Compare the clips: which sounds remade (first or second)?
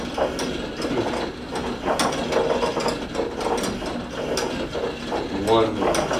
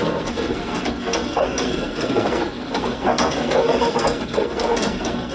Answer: second